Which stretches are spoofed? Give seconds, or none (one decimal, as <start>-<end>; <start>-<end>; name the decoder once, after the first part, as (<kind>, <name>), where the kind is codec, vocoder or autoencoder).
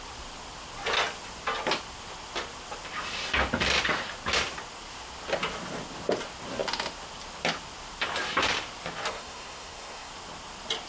9.1-10.1 (codec, SNAC)